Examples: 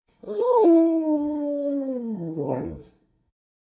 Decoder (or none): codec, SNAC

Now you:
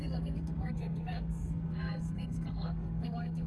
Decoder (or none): codec, SNAC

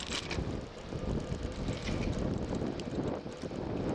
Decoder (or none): none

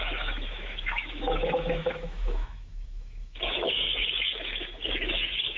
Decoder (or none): autoencoder, DAC-VAE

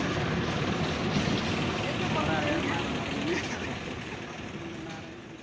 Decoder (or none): none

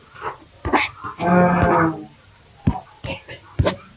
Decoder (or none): none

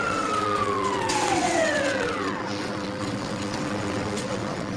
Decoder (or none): vocoder, WaveNeXt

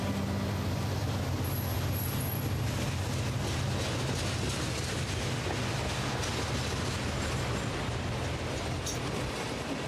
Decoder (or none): none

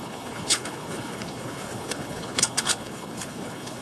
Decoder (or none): codec, HILCodec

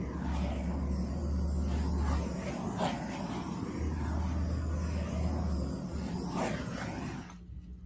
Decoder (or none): none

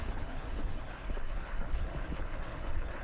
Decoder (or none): codec, HILCodec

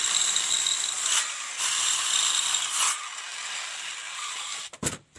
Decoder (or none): none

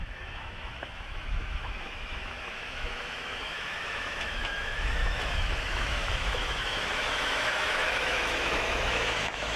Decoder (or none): autoencoder, DAC-VAE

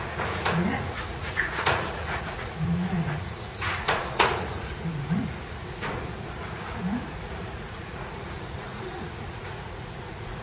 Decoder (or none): vocoder, Vocos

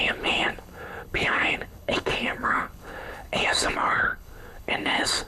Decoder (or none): codec, HILCodec